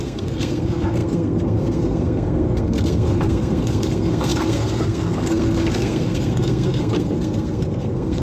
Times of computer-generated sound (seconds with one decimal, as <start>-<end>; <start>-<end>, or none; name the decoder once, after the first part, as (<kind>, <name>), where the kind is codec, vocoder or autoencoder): 0.0-8.2 (codec, SNAC)